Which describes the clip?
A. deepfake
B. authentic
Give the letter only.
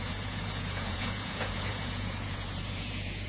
A